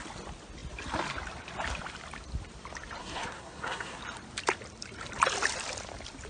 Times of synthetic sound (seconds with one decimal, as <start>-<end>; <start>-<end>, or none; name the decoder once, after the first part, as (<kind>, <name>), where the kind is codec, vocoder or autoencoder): 3.0-4.0 (codec, SNAC)